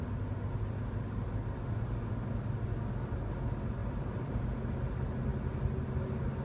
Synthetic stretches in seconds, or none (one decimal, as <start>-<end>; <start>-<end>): 3.8-4.4